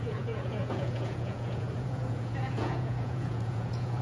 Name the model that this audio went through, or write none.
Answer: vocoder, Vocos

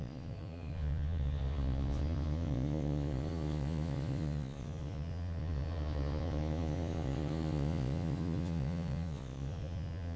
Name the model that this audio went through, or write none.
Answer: vocoder, Vocos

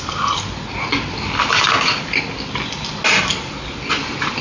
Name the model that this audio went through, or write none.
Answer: none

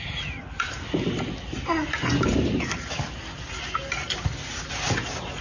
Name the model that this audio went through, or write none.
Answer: none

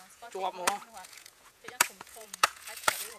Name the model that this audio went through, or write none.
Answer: vocoder, Vocos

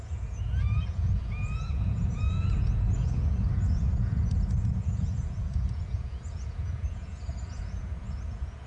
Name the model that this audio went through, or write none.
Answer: vocoder, Vocos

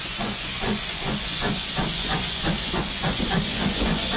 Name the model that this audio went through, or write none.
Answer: vocoder, Vocos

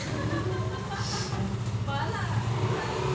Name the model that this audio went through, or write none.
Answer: none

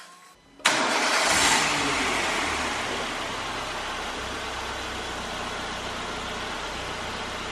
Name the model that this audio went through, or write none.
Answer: none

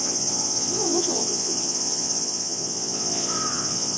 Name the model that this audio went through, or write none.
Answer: vocoder, Vocos